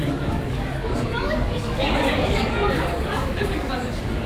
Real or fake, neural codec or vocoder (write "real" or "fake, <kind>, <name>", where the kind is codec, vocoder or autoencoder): fake, codec, DAC